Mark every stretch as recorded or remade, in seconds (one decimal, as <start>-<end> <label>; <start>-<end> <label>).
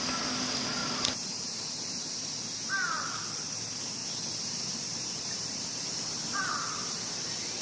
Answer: 0.0-0.8 recorded; 0.8-3.2 remade; 3.2-4.0 recorded; 4.0-6.5 remade; 6.5-7.6 recorded